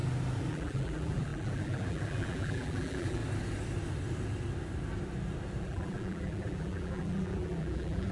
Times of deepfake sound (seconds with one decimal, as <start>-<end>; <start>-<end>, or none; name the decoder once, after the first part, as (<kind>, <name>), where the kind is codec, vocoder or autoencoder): 0.5-3.2 (vocoder, BigVGAN v2); 5.6-8.1